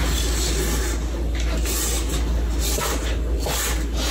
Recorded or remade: recorded